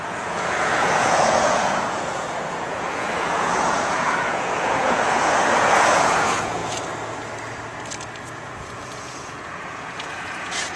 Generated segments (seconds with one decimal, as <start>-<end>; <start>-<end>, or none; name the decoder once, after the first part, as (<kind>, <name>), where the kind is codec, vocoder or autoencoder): 0.0-6.6 (vocoder, Vocos); 8.3-10.8